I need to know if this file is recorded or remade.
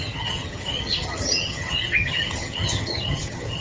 remade